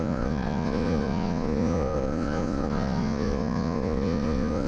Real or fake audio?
fake